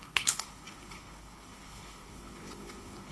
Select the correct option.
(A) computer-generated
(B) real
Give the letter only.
A